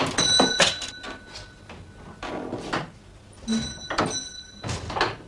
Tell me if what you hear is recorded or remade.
recorded